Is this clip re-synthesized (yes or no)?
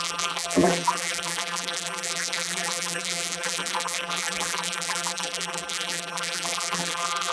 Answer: yes